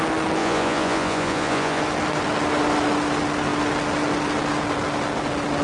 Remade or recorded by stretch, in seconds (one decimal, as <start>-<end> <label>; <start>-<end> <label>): 0.0-0.4 recorded; 0.4-1.8 remade; 1.8-5.6 recorded